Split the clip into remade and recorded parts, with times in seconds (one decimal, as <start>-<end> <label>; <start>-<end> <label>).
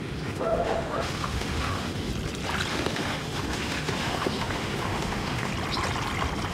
0.0-2.1 remade; 2.1-2.7 recorded; 2.7-5.5 remade; 5.5-6.5 recorded